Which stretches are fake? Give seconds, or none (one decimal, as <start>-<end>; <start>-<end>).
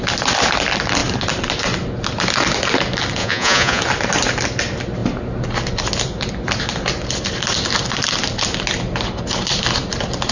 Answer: 3.2-3.8